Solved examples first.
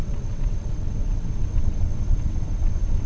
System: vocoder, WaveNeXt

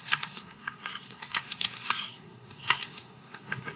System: codec, SNAC